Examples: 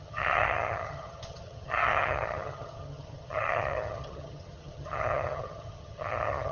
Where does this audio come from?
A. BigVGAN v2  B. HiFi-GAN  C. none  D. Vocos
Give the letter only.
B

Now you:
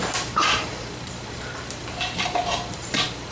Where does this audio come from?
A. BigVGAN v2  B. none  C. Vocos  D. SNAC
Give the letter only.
A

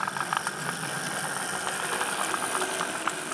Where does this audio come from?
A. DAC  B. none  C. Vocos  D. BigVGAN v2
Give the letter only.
B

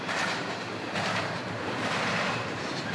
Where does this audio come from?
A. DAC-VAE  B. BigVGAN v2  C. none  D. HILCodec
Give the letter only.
B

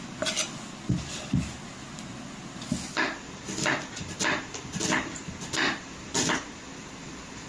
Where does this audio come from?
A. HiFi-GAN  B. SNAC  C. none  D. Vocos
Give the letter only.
C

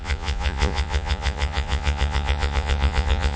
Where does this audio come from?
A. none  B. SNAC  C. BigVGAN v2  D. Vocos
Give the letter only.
D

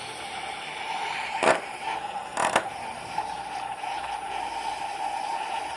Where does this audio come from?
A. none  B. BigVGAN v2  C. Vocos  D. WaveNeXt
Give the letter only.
B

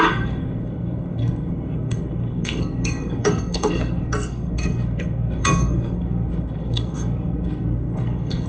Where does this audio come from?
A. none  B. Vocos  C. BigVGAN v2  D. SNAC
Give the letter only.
D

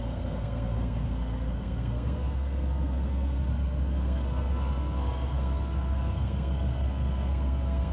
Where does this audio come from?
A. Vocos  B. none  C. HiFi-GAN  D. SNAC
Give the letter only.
D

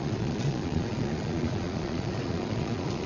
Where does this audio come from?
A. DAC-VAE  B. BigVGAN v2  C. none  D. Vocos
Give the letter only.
D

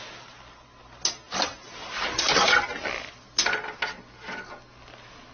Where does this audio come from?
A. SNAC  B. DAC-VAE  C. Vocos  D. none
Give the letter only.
D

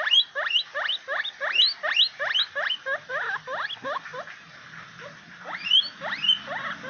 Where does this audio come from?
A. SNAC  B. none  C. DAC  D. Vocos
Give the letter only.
B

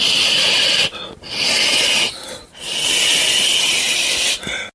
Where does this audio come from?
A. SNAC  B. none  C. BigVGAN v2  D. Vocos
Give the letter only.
B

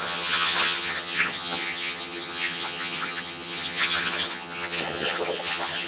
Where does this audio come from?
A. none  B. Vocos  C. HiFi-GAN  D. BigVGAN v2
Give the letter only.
C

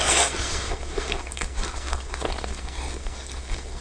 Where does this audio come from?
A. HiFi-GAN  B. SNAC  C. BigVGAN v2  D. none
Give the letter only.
B